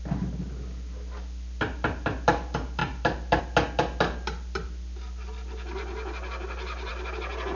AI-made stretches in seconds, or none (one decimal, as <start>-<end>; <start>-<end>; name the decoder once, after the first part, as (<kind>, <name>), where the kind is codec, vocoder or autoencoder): none